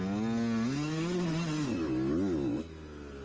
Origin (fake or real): real